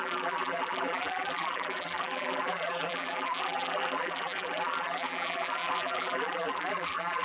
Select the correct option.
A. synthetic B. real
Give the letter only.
A